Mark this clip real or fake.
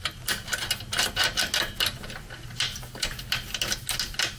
real